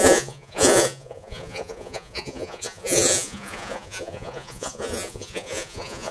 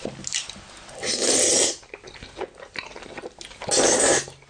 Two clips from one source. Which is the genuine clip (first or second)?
second